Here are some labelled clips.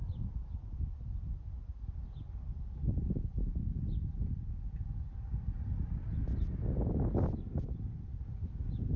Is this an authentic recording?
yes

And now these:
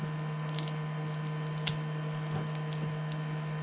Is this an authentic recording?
yes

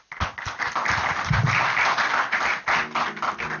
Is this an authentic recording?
yes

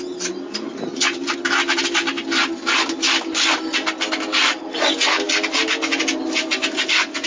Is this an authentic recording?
yes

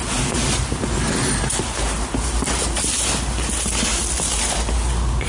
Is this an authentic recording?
yes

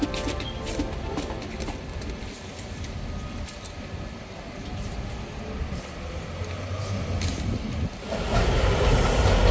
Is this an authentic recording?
yes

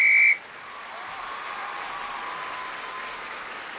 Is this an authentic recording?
yes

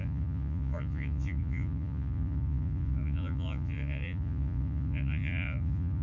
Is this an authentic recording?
no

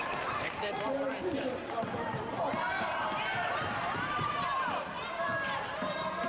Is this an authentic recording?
no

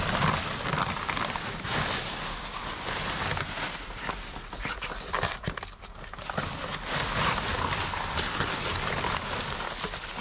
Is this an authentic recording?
yes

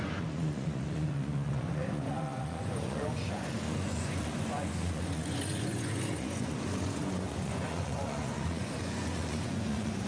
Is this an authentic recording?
no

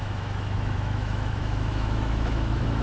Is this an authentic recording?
no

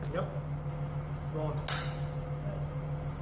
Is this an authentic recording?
yes